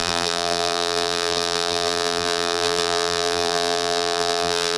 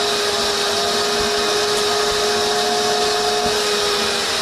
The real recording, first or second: second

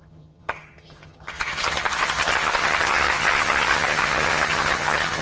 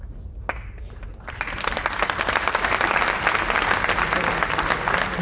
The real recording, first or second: second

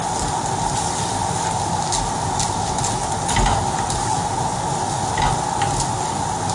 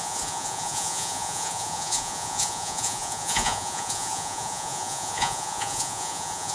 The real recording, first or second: first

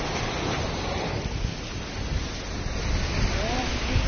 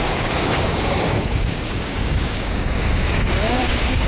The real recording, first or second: first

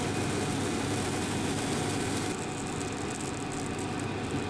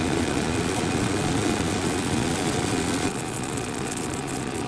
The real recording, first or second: first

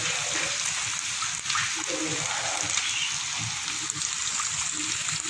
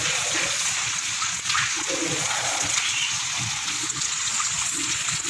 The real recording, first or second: first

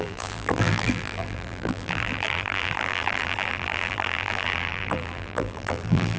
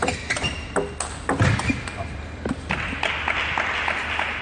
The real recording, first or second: second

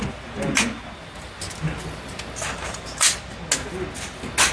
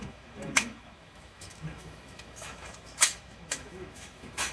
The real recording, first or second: first